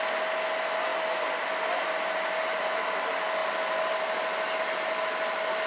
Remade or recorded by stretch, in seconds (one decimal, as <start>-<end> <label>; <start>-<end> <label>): 0.0-5.7 remade